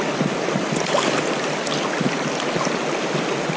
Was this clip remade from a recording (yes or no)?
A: no